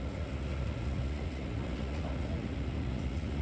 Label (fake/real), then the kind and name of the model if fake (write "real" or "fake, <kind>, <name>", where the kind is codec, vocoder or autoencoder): fake, vocoder, Vocos